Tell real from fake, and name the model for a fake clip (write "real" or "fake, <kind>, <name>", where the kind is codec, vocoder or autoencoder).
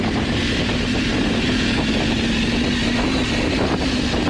real